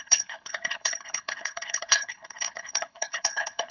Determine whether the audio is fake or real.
fake